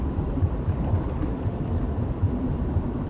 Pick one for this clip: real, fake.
real